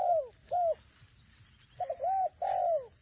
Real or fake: real